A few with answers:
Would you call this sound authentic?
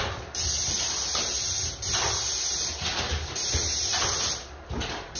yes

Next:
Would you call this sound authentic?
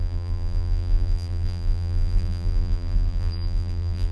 no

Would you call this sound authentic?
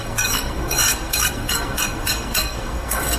no